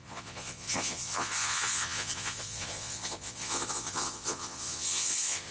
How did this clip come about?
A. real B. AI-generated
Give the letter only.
B